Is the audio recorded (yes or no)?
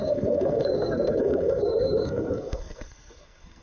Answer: no